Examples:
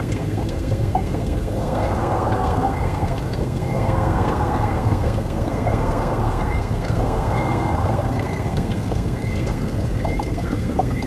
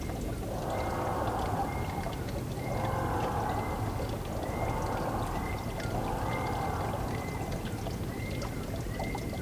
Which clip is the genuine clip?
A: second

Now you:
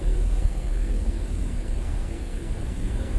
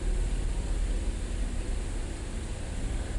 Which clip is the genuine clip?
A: second